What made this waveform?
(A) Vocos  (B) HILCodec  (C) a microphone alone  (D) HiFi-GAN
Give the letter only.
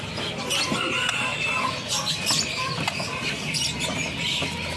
C